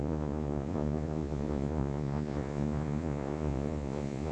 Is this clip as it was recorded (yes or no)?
no